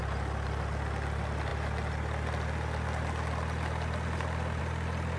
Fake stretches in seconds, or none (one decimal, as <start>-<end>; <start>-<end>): none